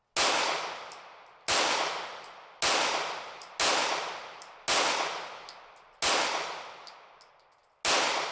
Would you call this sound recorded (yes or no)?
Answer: yes